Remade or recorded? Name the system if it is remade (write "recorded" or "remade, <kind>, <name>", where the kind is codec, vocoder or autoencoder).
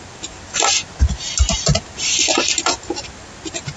recorded